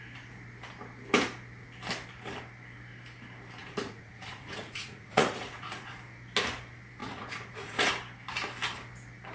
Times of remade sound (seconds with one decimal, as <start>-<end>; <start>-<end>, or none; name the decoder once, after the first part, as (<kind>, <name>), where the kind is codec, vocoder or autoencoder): 3.6-5.9 (vocoder, Vocos); 7.0-7.9